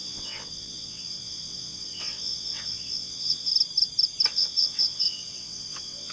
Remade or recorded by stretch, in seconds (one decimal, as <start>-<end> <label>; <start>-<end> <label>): 0.0-3.5 remade; 3.5-4.3 recorded; 4.3-6.1 remade